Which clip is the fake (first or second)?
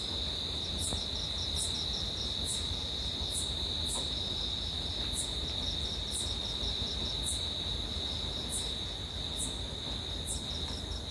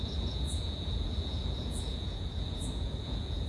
second